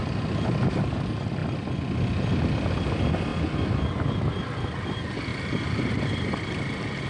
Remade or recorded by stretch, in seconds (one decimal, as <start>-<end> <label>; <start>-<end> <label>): 0.0-7.1 recorded